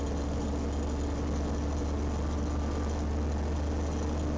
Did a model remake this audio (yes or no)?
no